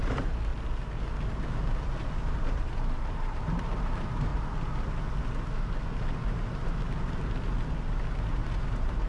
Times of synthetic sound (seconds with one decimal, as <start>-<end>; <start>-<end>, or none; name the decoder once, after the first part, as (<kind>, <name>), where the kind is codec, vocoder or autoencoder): 0.0-0.5 (vocoder, BigVGAN v2); 1.8-4.3; 8.1-9.1